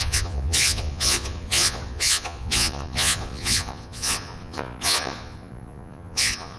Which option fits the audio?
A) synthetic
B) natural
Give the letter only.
A